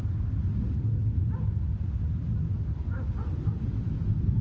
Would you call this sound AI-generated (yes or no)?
no